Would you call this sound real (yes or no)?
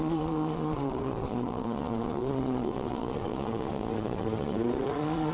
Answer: no